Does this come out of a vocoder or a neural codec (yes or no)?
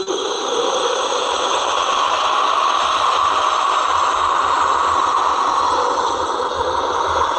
no